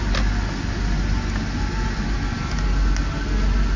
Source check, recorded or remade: recorded